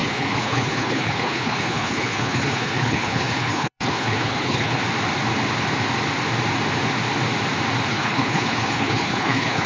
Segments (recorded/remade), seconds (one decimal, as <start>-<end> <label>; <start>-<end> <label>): 0.0-4.8 remade; 4.8-7.9 recorded; 7.9-9.7 remade